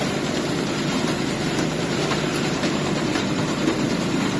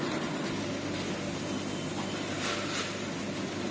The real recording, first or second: second